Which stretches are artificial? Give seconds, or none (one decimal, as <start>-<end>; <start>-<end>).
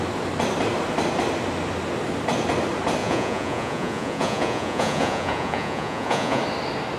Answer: 3.0-6.4